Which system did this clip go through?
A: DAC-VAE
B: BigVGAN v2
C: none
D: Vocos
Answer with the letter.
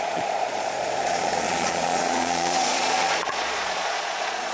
D